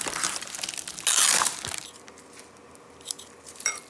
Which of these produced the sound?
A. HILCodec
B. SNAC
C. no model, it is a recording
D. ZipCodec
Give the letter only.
C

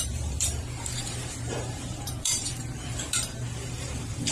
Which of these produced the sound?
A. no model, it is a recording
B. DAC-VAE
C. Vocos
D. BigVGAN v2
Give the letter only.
D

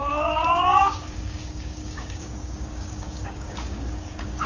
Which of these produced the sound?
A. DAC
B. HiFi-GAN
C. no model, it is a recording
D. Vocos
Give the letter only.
A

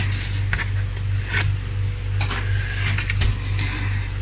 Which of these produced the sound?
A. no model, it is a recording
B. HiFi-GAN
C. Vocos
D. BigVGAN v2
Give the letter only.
A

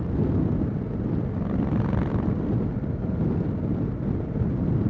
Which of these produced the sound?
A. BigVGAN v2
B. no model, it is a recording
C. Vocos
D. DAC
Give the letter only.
B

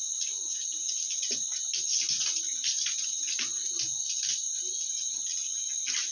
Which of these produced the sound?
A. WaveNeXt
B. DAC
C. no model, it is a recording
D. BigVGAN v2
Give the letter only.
C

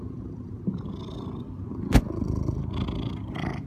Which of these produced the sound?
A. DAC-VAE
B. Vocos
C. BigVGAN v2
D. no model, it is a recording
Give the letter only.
D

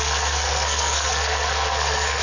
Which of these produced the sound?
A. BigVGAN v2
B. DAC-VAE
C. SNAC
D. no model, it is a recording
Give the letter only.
C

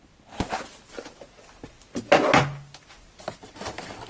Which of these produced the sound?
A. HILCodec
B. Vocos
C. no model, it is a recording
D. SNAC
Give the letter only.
C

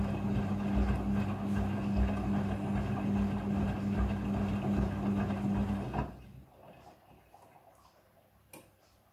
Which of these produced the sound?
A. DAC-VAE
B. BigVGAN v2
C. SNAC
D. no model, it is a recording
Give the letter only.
D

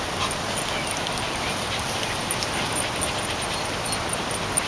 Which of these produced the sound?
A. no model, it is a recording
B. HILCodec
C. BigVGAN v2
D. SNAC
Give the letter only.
A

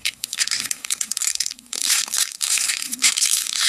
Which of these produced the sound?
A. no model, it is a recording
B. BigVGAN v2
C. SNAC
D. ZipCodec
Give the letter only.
C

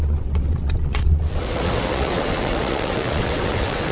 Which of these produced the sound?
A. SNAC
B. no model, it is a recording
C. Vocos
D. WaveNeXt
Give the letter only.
D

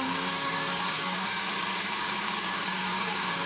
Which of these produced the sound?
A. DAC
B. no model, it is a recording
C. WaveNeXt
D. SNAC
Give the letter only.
A